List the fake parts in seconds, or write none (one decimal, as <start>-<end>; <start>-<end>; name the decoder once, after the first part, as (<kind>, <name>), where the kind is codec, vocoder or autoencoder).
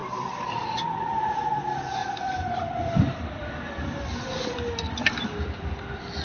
0.0-1.4 (vocoder, BigVGAN v2); 2.0-5.7